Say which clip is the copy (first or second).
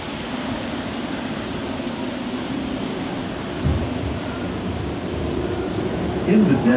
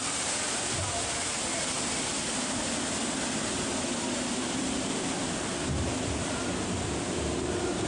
first